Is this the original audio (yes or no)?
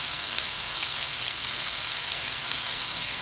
no